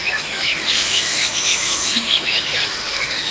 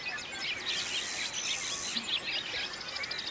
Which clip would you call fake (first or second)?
first